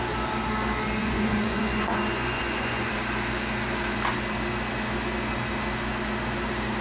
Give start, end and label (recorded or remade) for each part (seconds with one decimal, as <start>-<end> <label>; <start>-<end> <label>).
0.0-1.0 recorded; 1.0-2.9 remade; 2.9-6.8 recorded